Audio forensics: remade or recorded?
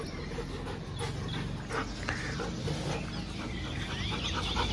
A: recorded